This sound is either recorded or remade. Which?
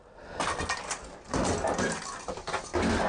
recorded